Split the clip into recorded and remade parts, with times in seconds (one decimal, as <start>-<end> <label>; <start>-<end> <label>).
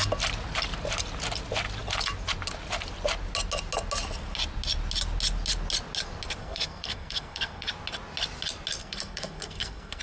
0.0-6.4 recorded; 6.4-7.7 remade; 7.7-8.8 recorded; 8.8-10.0 remade